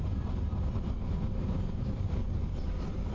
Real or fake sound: fake